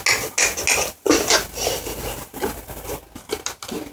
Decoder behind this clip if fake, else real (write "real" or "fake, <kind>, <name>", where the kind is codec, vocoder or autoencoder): real